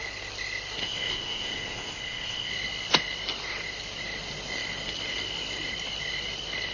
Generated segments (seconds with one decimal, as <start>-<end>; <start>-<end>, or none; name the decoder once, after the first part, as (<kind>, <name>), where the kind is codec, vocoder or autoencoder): 0.8-2.5 (codec, ZipCodec)